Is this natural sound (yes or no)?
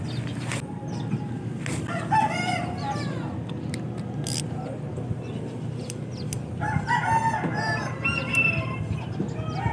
yes